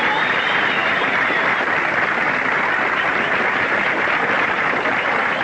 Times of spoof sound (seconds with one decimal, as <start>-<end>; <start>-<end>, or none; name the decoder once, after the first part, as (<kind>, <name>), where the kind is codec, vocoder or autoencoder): none

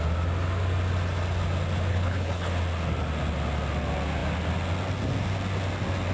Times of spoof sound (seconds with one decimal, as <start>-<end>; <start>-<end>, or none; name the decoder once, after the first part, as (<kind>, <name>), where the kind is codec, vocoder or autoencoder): 1.9-2.5 (codec, HILCodec)

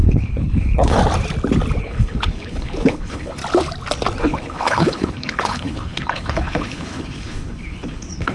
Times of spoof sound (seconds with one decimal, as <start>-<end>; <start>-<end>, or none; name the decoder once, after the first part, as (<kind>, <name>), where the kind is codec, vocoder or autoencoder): 0.0-1.0 (codec, HILCodec); 1.8-3.4; 4.2-8.3

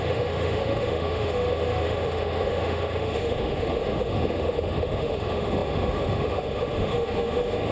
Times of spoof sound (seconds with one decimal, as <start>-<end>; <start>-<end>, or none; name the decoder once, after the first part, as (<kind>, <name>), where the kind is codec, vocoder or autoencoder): 0.0-7.7 (autoencoder, DAC-VAE)

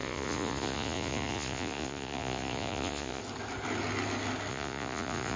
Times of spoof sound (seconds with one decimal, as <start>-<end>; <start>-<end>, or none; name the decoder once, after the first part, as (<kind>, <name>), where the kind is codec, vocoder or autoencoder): 0.0-3.2 (vocoder, Vocos); 4.5-5.4

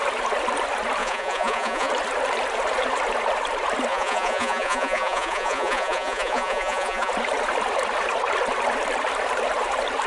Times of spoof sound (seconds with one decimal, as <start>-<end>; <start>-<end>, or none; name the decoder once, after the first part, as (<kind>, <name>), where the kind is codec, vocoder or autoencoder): 1.0-1.9 (vocoder, Vocos); 3.9-7.1

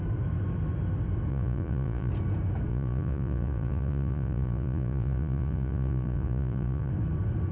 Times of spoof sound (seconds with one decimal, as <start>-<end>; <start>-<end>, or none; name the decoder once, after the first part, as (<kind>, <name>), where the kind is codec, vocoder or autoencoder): 1.3-2.1 (vocoder, Vocos); 2.7-6.9

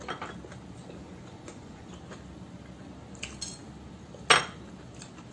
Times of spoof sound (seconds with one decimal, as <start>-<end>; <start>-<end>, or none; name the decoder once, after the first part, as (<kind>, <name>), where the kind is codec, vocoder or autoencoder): 1.0-1.9 (vocoder, Vocos)